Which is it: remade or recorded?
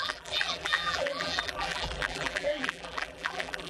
remade